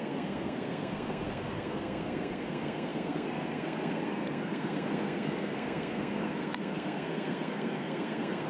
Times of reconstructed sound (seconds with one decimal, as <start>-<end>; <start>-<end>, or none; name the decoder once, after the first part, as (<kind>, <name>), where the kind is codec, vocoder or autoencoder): 0.0-8.5 (codec, SNAC)